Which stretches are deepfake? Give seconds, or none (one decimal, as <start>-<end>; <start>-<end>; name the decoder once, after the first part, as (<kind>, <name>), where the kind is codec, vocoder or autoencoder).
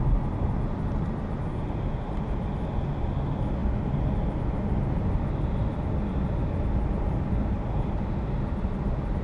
0.0-9.2 (vocoder, BigVGAN v2)